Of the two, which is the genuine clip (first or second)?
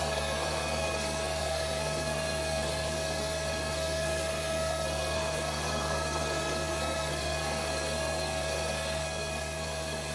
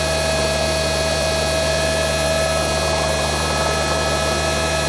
second